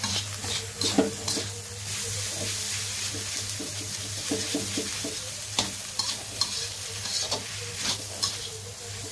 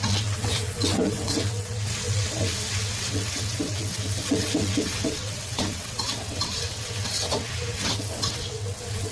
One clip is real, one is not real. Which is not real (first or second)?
second